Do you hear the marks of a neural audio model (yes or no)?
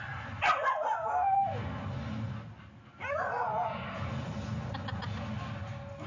no